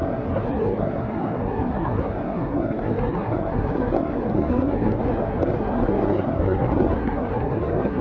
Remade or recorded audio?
remade